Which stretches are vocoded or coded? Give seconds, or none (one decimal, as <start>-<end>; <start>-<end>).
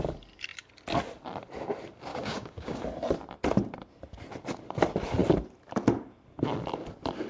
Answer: 2.1-2.8